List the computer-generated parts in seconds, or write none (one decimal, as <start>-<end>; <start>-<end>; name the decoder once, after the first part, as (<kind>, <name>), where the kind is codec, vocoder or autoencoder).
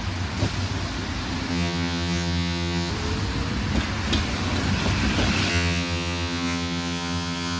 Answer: 1.5-2.9 (vocoder, HiFi-GAN); 5.5-7.6